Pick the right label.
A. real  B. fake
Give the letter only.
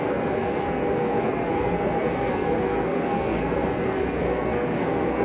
B